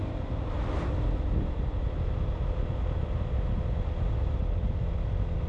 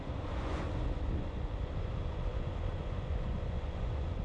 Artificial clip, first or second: second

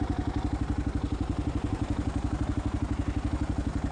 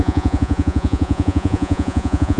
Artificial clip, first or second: second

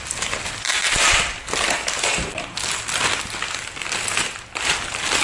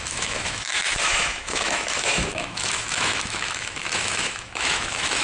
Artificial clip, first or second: second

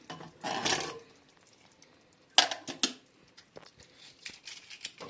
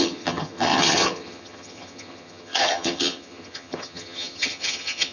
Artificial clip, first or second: second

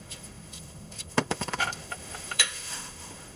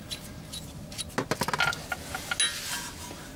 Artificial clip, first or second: first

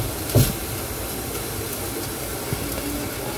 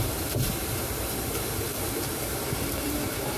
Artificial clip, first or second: second